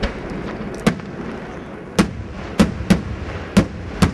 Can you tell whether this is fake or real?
real